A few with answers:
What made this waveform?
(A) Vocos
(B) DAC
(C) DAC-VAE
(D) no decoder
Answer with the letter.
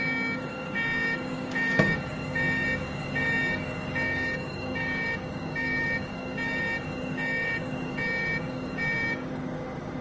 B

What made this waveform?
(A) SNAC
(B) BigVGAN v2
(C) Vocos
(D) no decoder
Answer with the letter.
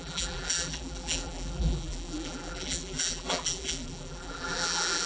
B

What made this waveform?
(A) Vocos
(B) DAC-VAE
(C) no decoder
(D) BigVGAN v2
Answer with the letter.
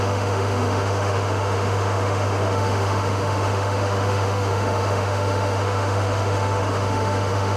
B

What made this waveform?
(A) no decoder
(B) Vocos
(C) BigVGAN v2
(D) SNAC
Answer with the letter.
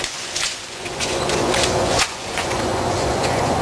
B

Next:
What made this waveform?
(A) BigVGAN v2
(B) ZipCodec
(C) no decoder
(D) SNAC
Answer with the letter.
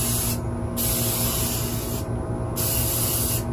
C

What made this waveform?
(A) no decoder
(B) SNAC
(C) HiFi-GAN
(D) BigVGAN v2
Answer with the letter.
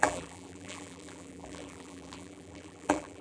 D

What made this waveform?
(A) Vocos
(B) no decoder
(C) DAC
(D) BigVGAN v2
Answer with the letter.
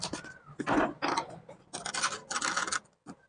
B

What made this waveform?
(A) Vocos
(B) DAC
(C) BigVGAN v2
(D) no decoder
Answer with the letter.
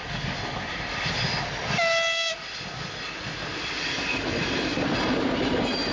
D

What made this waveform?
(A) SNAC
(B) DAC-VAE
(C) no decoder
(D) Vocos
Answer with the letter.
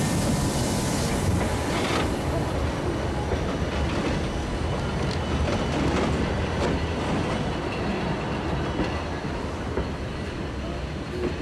C